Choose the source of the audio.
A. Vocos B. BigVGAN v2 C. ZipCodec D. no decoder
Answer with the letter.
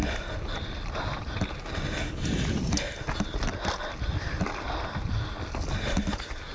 D